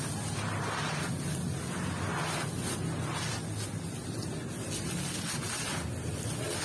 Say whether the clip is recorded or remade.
recorded